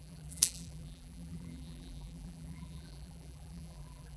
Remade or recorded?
remade